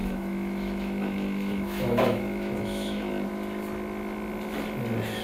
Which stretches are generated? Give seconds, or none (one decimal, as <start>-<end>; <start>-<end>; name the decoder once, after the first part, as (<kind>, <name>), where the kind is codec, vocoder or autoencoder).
0.0-3.1 (autoencoder, DAC-VAE)